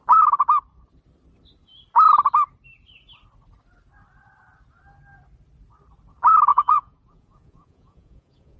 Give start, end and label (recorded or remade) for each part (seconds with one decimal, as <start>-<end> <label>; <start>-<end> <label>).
0.0-6.5 recorded; 6.5-8.6 remade